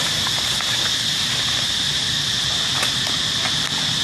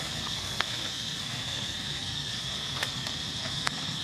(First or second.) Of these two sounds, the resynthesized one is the second